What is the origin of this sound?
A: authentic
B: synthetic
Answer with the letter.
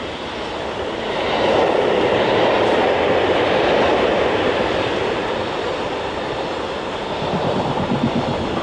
A